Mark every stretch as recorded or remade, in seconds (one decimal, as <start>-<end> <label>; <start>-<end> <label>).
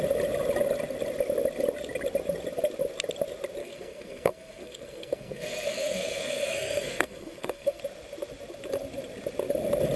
0.0-3.6 recorded; 3.6-7.8 remade; 7.8-10.0 recorded